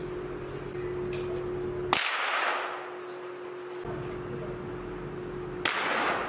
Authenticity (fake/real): real